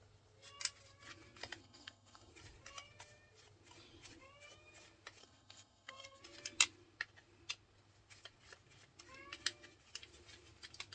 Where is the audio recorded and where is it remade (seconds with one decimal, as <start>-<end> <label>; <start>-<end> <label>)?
0.0-1.6 recorded; 1.6-2.3 remade; 2.3-5.2 recorded; 5.2-6.2 remade; 6.2-10.9 recorded